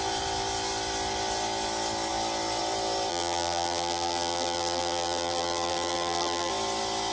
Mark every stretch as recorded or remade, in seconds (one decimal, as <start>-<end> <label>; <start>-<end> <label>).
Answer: 0.0-3.1 recorded; 3.1-6.5 remade; 6.5-7.1 recorded